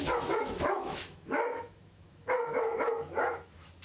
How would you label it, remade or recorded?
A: remade